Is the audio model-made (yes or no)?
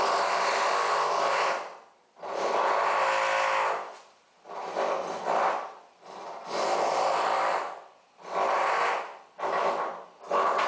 no